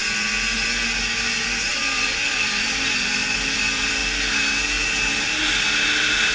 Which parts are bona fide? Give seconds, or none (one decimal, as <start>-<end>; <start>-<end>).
0.0-1.7; 4.0-6.3